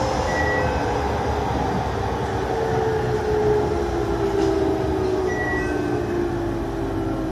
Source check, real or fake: real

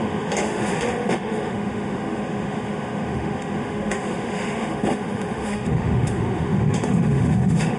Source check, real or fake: fake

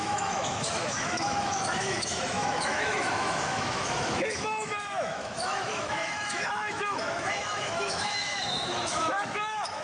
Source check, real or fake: fake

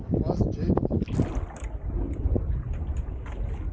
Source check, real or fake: real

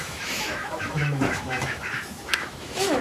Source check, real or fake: fake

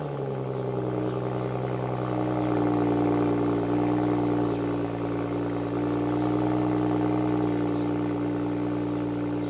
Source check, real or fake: real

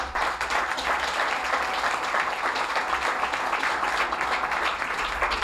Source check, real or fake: real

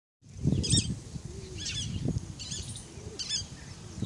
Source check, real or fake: real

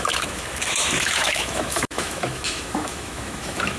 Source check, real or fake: fake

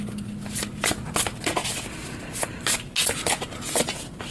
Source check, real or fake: real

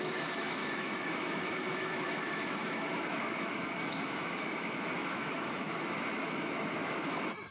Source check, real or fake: fake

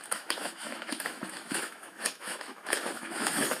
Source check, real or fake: fake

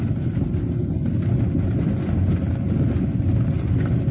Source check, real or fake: real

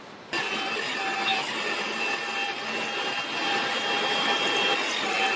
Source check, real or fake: real